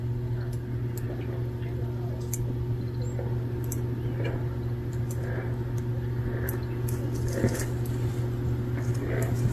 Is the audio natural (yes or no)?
yes